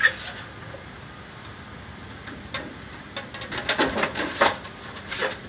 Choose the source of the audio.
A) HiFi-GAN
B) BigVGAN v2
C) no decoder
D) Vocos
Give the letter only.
C